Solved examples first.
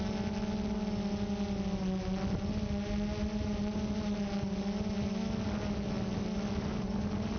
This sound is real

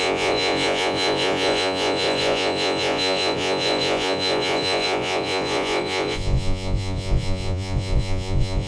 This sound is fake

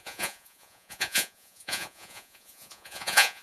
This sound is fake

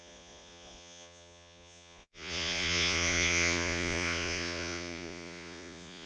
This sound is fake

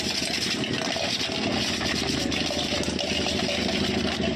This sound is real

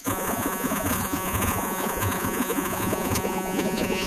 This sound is fake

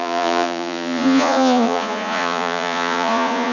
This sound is fake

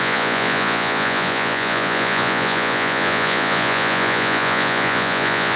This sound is fake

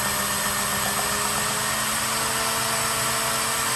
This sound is real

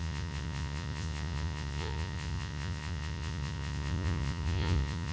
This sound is fake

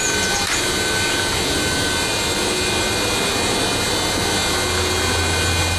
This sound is real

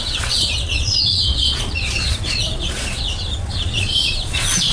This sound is fake